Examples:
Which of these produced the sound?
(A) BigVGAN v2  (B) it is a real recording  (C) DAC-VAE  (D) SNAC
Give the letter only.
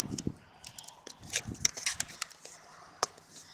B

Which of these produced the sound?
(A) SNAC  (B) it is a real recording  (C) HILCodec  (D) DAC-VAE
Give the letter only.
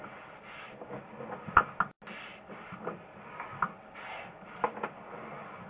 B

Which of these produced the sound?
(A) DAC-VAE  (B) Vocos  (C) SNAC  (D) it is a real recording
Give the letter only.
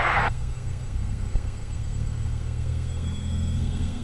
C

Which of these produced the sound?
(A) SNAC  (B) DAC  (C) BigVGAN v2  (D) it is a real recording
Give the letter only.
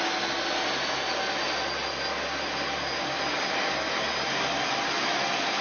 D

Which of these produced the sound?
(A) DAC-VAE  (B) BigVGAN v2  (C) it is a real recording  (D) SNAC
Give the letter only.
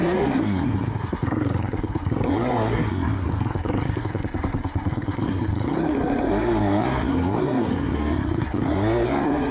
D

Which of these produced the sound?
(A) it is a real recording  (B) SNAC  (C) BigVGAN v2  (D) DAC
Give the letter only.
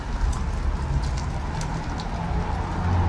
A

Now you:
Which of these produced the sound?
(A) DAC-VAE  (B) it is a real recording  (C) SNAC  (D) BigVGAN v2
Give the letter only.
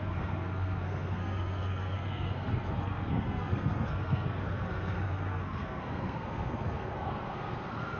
C